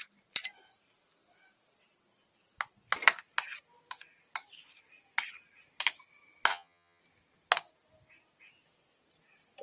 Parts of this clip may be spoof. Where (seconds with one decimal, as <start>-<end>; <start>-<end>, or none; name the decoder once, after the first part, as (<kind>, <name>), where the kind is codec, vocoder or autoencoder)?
6.5-7.0 (vocoder, HiFi-GAN)